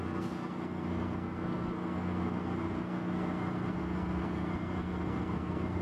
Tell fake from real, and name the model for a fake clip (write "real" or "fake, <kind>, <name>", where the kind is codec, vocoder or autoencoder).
fake, codec, SNAC